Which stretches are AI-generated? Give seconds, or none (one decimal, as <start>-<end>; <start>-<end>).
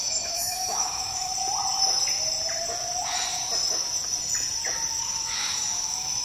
0.0-1.3; 5.0-6.2